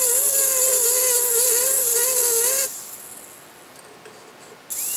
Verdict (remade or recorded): recorded